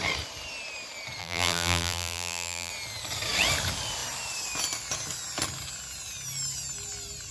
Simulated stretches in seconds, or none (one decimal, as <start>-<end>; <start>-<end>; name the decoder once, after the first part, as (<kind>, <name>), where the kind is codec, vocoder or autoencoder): 1.2-2.7 (vocoder, BigVGAN v2)